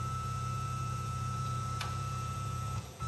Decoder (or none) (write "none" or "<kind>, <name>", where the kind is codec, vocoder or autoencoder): vocoder, Vocos